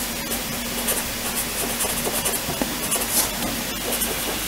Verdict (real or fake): real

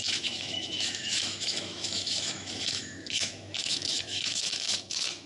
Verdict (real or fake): fake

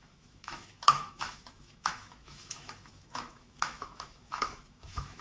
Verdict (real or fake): fake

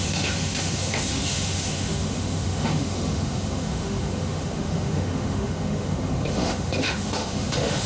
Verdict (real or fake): fake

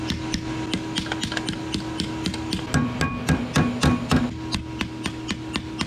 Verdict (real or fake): real